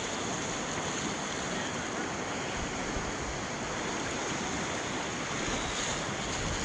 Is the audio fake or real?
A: real